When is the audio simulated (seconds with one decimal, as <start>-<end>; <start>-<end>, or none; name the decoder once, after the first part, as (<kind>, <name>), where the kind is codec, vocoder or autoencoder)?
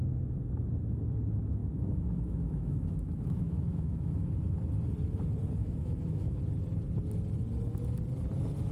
1.6-4.3 (autoencoder, DAC-VAE); 5.6-6.4